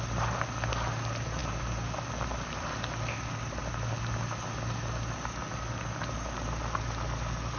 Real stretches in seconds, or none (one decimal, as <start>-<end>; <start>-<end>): 0.0-7.6